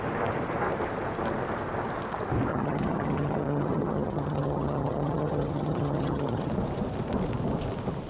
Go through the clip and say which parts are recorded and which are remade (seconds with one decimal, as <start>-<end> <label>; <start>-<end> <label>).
0.0-2.5 recorded; 2.5-6.5 remade; 6.5-8.1 recorded